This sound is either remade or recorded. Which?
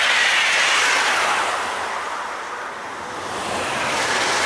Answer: recorded